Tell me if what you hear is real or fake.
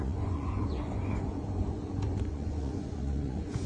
fake